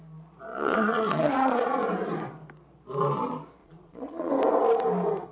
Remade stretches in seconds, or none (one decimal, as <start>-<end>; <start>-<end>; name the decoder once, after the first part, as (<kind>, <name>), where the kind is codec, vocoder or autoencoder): 0.5-1.8 (vocoder, Vocos); 3.6-4.3